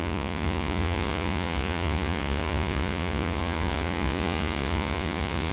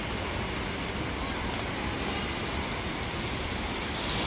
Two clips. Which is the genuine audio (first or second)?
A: second